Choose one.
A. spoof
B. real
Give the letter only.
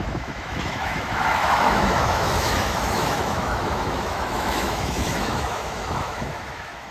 A